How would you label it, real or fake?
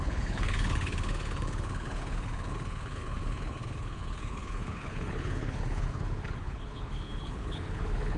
fake